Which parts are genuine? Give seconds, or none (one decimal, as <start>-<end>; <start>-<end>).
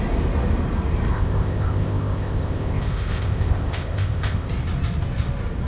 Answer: 0.0-1.1; 4.5-5.7